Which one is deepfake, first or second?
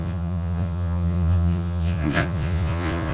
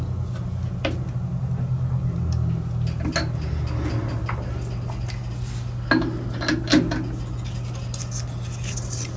first